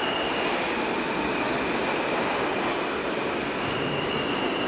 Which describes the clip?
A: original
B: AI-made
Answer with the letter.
A